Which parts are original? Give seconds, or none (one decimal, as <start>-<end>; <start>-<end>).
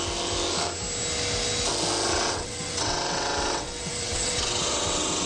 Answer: 0.0-2.1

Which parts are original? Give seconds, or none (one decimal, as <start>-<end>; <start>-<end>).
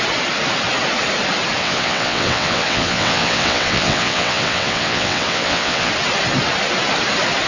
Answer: 0.0-1.6; 5.9-7.5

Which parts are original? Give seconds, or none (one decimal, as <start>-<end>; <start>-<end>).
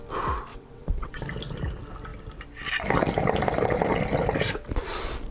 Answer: 0.0-0.5; 1.2-5.3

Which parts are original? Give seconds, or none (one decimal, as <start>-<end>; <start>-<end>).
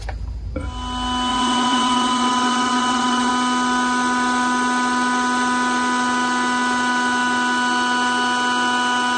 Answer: 0.0-1.3; 3.3-9.2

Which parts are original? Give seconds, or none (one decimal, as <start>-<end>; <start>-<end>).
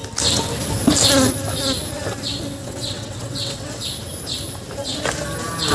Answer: 0.0-2.6; 3.8-5.7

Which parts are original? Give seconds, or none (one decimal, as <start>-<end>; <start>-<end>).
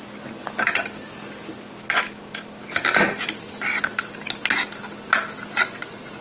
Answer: 0.0-6.2